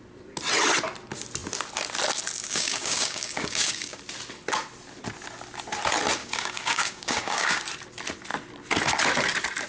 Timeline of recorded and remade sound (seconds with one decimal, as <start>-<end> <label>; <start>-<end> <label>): 0.0-2.4 recorded; 2.4-4.0 remade; 4.0-6.2 recorded; 6.2-7.6 remade; 7.6-9.7 recorded